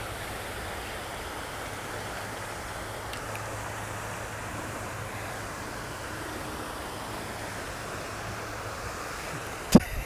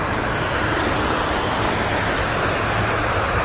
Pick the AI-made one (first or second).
second